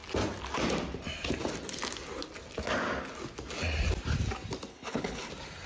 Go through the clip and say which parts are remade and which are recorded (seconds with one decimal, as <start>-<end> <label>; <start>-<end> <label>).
0.0-4.7 recorded; 4.7-5.3 remade; 5.3-5.7 recorded